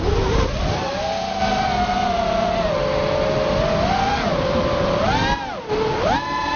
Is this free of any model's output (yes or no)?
yes